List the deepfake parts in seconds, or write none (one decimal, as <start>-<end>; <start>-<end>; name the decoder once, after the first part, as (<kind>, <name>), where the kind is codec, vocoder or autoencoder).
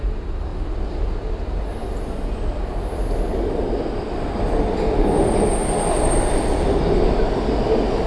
5.6-7.5 (vocoder, BigVGAN v2)